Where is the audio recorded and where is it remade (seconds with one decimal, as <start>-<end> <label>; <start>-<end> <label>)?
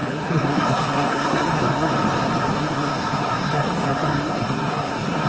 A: 0.0-1.9 remade; 1.9-2.4 recorded; 2.4-5.3 remade